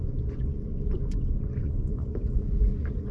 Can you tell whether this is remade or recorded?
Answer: remade